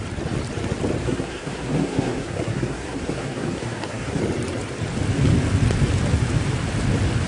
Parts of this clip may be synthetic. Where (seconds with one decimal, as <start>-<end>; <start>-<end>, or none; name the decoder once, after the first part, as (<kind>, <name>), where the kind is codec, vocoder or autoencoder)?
1.0-4.2 (codec, SNAC)

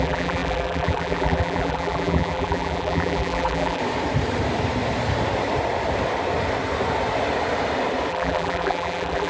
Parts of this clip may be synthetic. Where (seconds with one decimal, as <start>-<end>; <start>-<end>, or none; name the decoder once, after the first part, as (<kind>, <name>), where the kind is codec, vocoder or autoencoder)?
0.0-3.8 (vocoder, BigVGAN v2); 8.1-9.3

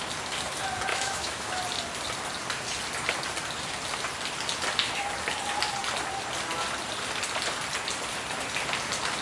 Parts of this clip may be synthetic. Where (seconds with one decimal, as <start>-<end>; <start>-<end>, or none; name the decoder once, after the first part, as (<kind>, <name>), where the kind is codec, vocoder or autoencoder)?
0.9-1.6 (autoencoder, DAC-VAE)